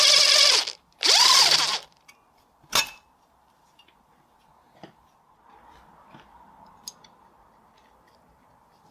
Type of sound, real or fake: fake